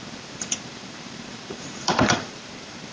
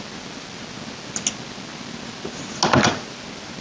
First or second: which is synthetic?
first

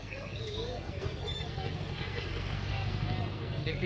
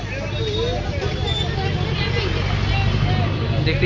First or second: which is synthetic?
first